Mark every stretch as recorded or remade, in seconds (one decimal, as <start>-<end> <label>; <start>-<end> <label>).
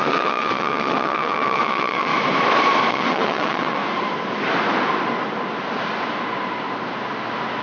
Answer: 0.0-2.1 remade; 2.1-2.9 recorded; 2.9-3.8 remade; 3.8-7.6 recorded